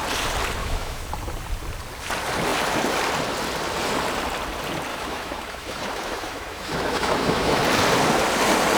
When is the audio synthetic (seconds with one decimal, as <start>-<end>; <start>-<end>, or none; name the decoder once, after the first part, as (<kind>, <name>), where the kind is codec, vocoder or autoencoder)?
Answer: 0.6-1.1 (autoencoder, DAC-VAE); 4.9-7.6